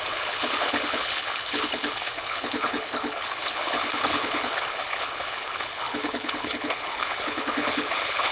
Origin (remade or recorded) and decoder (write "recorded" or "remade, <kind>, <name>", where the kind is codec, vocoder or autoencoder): remade, codec, HILCodec